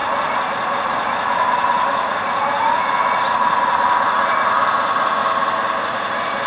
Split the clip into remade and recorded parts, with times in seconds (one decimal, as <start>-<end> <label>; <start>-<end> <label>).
0.0-5.2 remade; 5.2-5.8 recorded; 5.8-6.5 remade